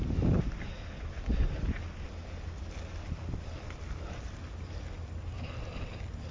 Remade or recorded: recorded